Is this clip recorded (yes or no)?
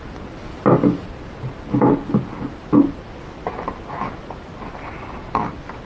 yes